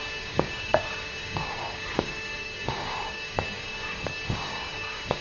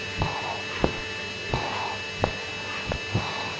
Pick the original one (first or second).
second